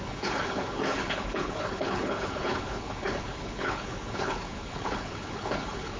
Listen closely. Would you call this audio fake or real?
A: fake